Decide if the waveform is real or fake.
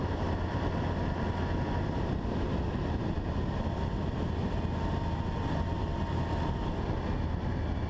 real